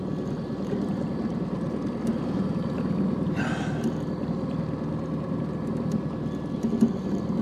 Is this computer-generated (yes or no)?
no